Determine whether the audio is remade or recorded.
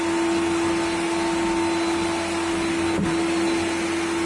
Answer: recorded